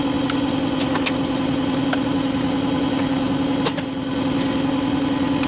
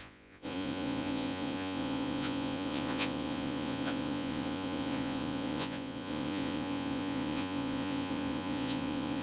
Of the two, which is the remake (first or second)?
second